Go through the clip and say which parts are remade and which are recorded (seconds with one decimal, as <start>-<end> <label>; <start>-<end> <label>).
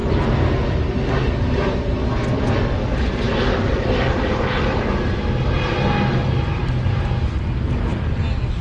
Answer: 0.0-8.6 recorded